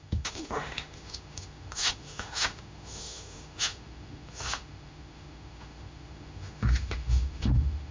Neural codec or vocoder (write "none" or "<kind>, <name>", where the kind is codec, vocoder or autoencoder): autoencoder, DAC-VAE